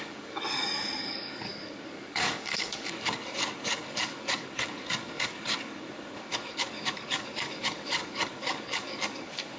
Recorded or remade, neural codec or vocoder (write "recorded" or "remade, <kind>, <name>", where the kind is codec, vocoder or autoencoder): remade, codec, DAC